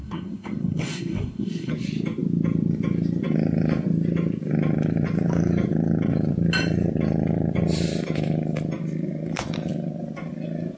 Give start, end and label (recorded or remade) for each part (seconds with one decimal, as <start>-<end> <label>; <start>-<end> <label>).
0.0-1.7 remade; 1.7-10.8 recorded